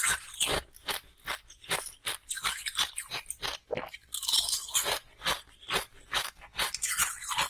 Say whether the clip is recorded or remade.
recorded